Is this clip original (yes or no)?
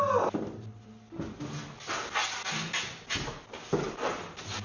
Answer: yes